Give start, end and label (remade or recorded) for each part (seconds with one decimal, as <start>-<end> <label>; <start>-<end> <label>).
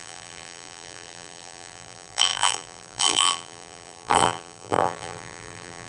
0.0-5.9 remade